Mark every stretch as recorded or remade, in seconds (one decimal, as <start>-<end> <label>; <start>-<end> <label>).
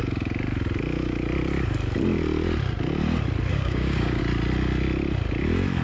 0.0-3.5 recorded; 3.5-4.2 remade; 4.2-5.8 recorded